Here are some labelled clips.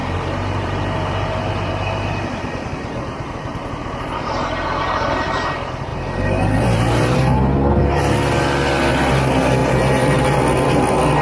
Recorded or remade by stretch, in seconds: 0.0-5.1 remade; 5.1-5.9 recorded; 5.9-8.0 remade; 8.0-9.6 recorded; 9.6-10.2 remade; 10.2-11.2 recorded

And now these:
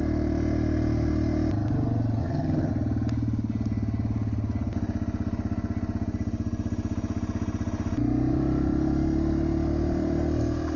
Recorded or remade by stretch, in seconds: 0.0-2.2 recorded; 2.2-2.7 remade; 2.7-10.8 recorded

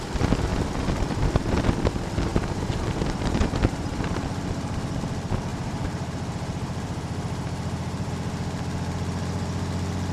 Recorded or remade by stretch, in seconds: 0.0-2.3 recorded; 2.3-4.2 remade; 4.2-5.5 recorded; 5.5-8.1 remade; 8.1-10.1 recorded